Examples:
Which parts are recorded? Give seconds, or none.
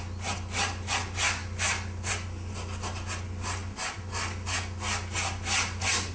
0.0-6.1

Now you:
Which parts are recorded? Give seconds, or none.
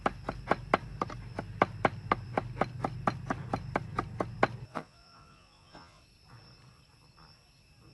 0.0-4.7; 6.0-7.9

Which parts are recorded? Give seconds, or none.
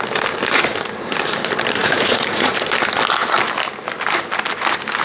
0.0-1.8; 2.5-5.0